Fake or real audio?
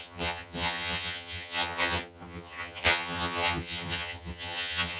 fake